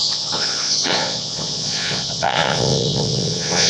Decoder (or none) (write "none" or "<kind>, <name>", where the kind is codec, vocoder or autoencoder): vocoder, Vocos